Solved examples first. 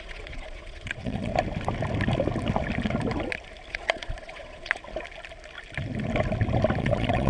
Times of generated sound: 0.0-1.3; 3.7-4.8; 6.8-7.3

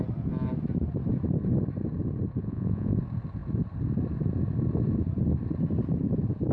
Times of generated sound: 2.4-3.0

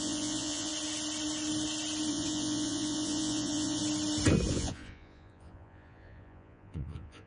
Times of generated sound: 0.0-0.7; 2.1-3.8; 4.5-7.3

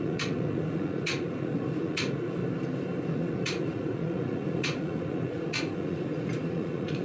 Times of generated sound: 0.0-2.4; 3.0-7.0